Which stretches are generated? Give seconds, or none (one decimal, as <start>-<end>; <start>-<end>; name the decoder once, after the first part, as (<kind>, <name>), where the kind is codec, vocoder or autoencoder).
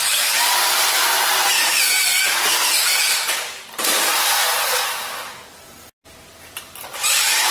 3.1-7.5 (vocoder, BigVGAN v2)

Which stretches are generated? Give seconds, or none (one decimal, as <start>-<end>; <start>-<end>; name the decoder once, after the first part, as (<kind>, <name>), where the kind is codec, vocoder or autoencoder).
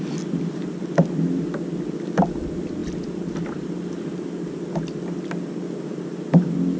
none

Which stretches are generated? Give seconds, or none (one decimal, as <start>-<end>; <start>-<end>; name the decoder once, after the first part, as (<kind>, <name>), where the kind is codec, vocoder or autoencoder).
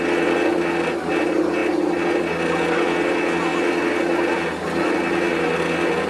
none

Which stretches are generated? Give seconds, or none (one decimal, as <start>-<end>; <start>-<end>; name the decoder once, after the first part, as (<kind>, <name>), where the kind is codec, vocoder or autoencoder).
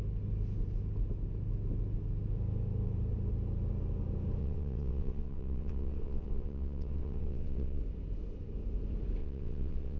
4.4-7.8 (vocoder, WaveNeXt); 9.2-10.0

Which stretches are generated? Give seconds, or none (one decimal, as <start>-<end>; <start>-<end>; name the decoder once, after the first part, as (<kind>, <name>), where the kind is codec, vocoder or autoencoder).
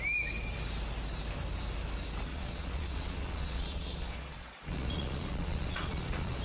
2.3-6.4 (vocoder, Vocos)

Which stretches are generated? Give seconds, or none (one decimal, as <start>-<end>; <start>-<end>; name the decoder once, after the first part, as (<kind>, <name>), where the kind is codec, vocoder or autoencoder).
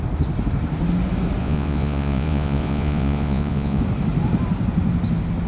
1.4-3.8 (vocoder, Vocos)